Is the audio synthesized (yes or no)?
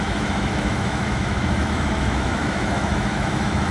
yes